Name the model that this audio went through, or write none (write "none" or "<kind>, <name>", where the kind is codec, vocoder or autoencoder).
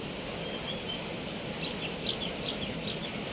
none